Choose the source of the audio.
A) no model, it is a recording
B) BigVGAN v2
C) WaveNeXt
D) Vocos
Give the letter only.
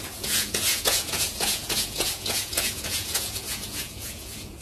D